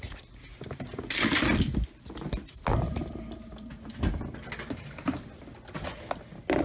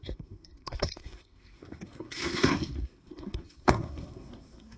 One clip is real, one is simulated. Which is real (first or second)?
first